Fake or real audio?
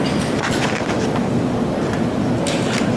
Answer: fake